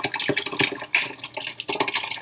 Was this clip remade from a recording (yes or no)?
no